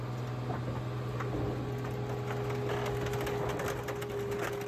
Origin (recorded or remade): recorded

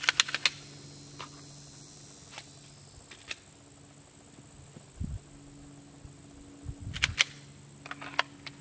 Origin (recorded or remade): recorded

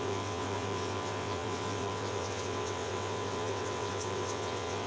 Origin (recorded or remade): remade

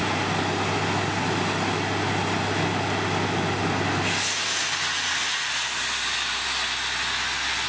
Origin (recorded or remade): recorded